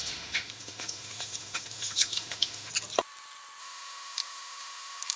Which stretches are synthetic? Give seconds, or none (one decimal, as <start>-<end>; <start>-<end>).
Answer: 0.0-2.7; 3.6-5.2